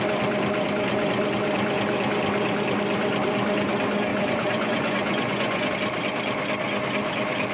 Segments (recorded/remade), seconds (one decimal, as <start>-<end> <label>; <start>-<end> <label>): 0.0-4.1 recorded; 4.1-5.7 remade; 5.7-7.5 recorded